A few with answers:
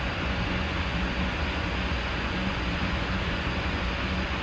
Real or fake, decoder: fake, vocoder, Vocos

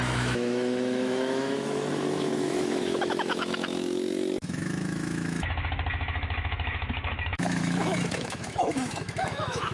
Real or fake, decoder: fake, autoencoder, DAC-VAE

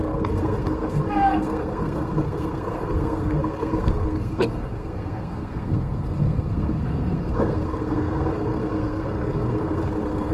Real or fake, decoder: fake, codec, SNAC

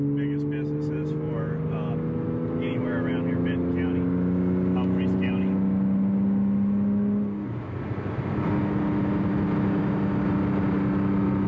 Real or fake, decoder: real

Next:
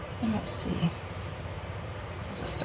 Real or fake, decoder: real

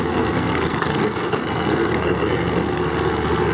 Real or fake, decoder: fake, codec, SNAC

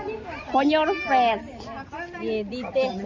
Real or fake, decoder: real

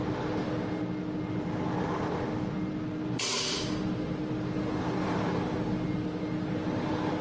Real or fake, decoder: real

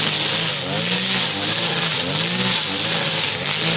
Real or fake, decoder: real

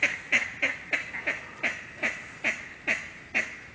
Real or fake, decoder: real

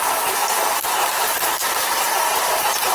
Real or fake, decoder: real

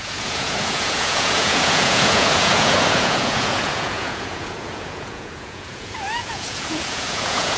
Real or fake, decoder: fake, vocoder, Vocos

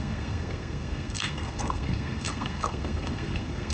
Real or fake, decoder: fake, codec, SNAC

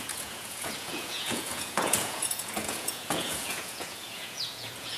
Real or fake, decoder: fake, vocoder, Vocos